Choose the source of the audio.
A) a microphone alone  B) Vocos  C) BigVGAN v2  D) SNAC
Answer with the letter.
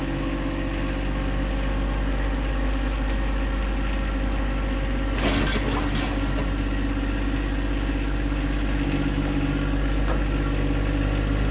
A